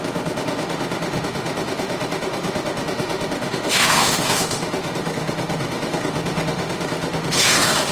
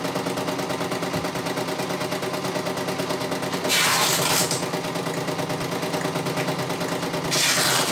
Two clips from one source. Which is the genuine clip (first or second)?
second